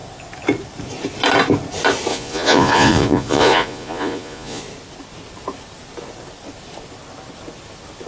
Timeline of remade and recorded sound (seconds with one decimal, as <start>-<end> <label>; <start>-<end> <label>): 0.0-2.1 recorded; 2.1-4.6 remade; 4.6-8.1 recorded